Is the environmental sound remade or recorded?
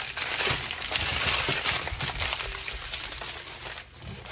recorded